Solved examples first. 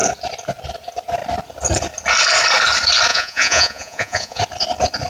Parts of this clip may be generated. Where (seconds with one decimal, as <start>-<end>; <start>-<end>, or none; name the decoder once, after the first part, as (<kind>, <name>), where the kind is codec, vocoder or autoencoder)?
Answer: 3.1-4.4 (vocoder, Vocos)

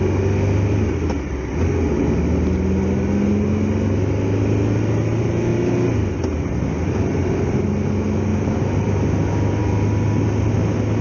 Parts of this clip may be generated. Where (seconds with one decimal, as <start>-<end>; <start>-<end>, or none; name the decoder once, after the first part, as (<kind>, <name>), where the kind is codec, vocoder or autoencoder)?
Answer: none

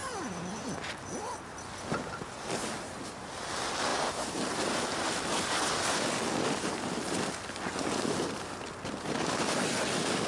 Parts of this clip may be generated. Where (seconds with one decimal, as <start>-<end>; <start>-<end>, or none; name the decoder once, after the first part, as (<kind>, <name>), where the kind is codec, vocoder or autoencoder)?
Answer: none

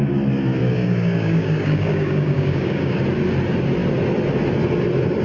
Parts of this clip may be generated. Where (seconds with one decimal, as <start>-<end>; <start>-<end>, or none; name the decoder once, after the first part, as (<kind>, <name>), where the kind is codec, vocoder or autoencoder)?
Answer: 0.6-3.0 (codec, DAC)